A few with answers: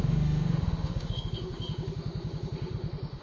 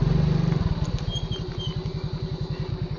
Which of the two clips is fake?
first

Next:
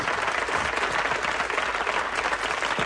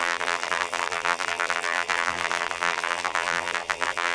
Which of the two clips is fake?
second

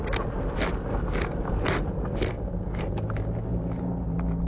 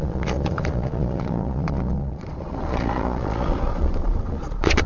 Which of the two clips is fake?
second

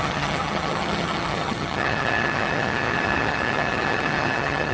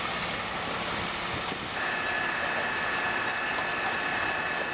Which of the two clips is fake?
first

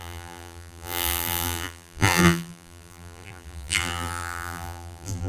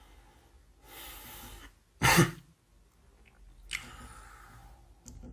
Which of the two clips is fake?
first